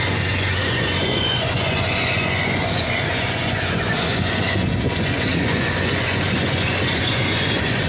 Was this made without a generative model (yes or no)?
no